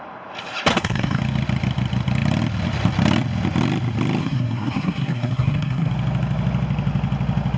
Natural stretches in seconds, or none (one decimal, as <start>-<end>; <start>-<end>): 0.0-0.7; 1.2-4.2; 5.9-7.6